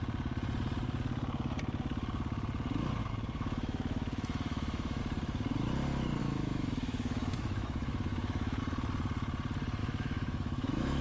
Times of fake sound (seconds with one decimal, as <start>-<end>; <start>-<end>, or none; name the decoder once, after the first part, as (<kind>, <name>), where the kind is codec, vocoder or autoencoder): 3.0-5.0 (autoencoder, DAC-VAE); 6.2-8.6; 9.8-11.0

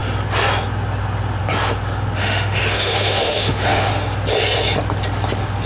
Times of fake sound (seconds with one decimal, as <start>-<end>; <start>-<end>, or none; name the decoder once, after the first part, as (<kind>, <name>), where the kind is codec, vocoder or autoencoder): 2.2-3.9 (autoencoder, DAC-VAE)

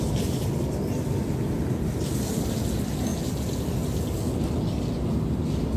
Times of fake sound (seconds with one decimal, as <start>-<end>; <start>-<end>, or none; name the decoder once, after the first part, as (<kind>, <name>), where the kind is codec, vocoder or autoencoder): none

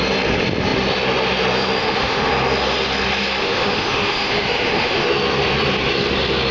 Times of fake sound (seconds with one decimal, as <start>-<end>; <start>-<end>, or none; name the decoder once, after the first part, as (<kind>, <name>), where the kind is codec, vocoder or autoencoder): 1.8-2.3 (autoencoder, DAC-VAE); 3.4-5.1

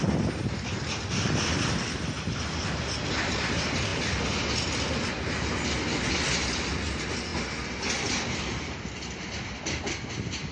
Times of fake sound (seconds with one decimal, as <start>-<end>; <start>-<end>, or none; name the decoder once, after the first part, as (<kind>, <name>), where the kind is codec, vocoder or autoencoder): none